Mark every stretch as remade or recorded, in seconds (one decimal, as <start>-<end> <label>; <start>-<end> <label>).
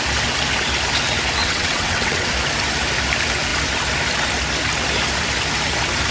0.0-1.4 recorded; 1.4-2.3 remade; 2.3-6.1 recorded